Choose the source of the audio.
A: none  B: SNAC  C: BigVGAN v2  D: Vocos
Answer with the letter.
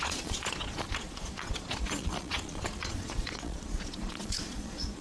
D